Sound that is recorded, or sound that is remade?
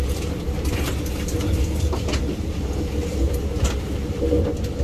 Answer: recorded